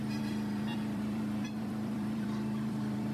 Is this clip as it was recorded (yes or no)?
no